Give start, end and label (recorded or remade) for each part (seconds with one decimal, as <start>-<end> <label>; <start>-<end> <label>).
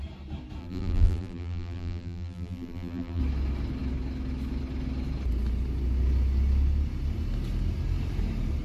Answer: 0.0-0.6 recorded; 0.6-3.2 remade; 3.2-8.6 recorded